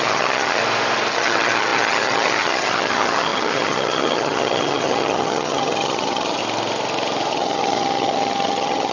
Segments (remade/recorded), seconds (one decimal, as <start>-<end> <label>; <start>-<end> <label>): 0.0-0.6 remade; 0.6-1.1 recorded; 1.1-6.4 remade; 6.4-7.3 recorded; 7.3-8.9 remade